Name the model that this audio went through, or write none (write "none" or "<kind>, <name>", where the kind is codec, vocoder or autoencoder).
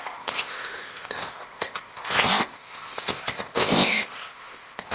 codec, ZipCodec